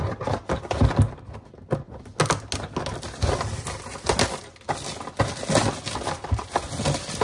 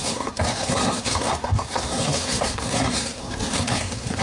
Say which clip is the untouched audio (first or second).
first